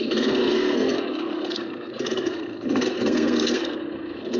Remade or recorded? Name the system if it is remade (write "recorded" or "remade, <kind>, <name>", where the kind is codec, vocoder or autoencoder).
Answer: remade, codec, SNAC